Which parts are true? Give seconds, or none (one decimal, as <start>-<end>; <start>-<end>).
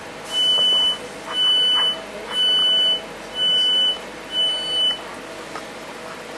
0.0-6.4